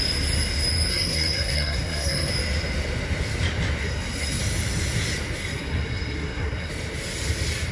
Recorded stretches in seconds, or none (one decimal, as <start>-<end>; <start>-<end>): 0.0-0.9; 2.3-3.8; 4.4-5.4; 6.7-7.7